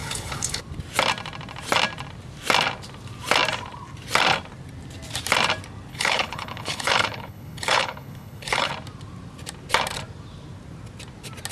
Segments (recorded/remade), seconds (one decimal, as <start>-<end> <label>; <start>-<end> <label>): 0.0-0.6 remade; 0.6-5.9 recorded; 5.9-8.7 remade; 8.7-11.5 recorded